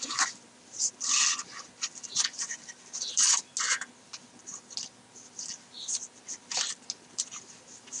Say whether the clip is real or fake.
real